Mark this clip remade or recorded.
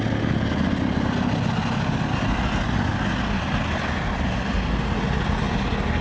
recorded